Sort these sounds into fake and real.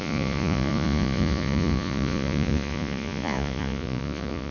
fake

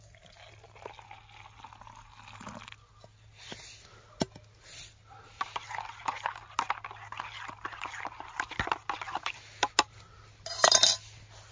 real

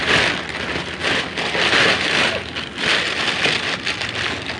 real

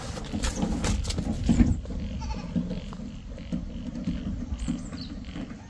real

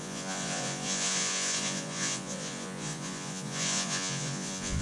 fake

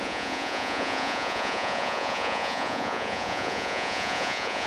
fake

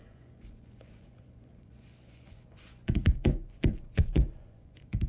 fake